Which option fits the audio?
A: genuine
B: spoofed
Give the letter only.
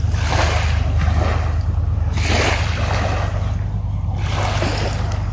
A